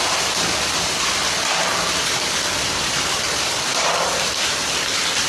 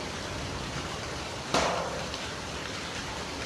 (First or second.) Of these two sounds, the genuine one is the first